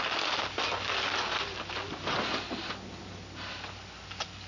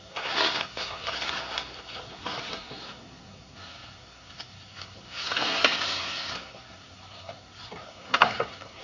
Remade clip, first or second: second